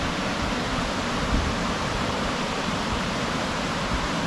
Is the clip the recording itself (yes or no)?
no